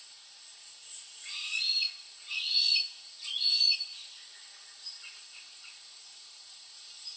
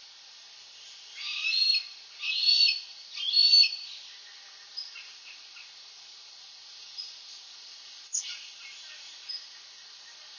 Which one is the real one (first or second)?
second